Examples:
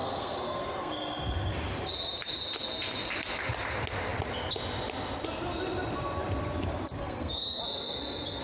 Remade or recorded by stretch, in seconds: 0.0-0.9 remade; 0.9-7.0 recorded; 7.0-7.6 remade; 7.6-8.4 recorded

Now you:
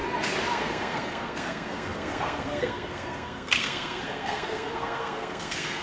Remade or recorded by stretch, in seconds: 0.0-0.5 recorded; 0.5-5.8 remade